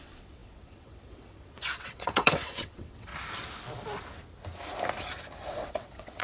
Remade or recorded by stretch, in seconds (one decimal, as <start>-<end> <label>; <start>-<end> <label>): 0.0-3.1 remade; 3.1-5.5 recorded; 5.5-6.2 remade